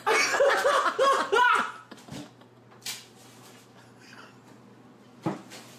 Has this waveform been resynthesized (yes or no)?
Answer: no